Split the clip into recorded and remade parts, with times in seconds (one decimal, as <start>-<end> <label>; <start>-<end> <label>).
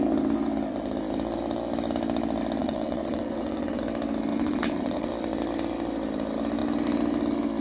0.0-2.6 recorded; 2.6-3.8 remade; 3.8-4.3 recorded; 4.3-5.1 remade; 5.1-7.6 recorded